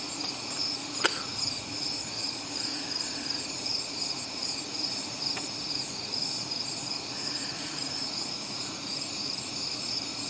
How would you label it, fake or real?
fake